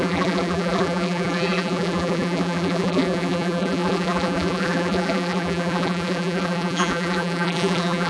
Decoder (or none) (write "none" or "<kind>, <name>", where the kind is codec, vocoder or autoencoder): vocoder, BigVGAN v2